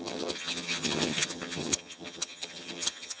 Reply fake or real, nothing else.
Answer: fake